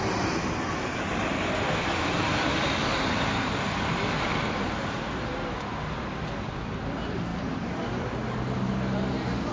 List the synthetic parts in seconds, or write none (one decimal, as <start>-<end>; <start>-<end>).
7.3-8.1